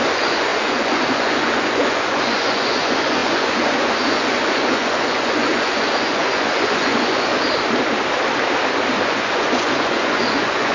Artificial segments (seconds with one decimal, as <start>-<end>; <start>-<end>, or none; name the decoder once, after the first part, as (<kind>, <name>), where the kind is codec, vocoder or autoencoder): 0.0-7.3 (vocoder, Vocos); 9.0-10.7

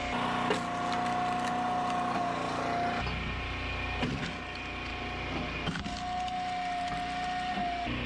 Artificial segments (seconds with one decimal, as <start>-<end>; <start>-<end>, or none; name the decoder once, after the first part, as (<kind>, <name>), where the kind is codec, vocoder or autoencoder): none

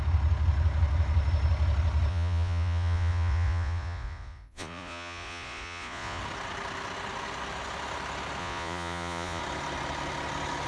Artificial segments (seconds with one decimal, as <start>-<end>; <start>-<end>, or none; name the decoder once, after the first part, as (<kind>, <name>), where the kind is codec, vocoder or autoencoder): 2.1-6.2 (vocoder, Vocos); 8.4-9.4

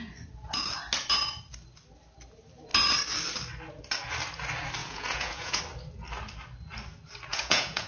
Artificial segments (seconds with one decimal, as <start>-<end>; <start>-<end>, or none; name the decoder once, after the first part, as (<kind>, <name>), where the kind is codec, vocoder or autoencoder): 4.8-5.6 (vocoder, Vocos); 7.3-7.9

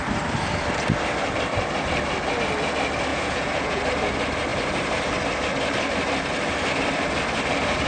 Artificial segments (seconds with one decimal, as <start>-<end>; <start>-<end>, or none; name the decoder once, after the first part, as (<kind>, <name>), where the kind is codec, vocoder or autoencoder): 3.1-3.8 (vocoder, Vocos)

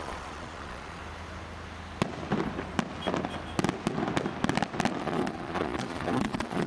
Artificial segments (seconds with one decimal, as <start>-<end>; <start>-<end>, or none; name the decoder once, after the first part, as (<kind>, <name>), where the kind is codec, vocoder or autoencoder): 0.0-1.0 (vocoder, Vocos); 5.0-6.7

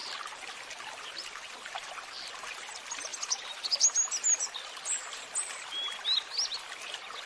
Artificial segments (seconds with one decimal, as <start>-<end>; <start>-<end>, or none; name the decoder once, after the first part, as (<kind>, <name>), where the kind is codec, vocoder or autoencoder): none